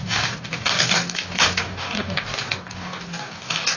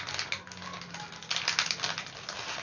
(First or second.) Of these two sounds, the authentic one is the second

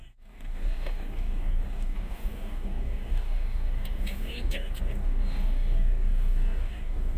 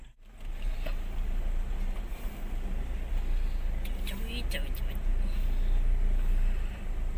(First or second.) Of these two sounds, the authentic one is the second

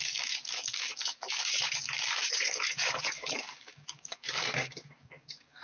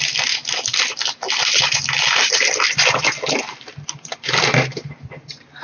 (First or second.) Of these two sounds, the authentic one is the second